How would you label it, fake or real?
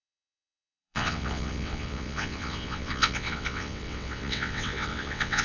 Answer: fake